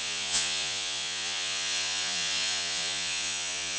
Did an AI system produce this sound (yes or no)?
yes